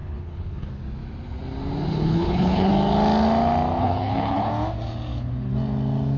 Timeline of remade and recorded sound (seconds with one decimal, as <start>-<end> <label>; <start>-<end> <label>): 0.0-0.7 remade; 0.7-1.9 recorded; 1.9-2.7 remade; 2.7-3.8 recorded; 3.8-4.5 remade; 4.5-6.2 recorded